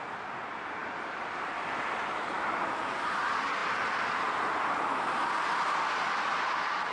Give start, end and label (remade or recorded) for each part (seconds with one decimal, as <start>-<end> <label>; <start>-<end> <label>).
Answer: 0.0-6.9 recorded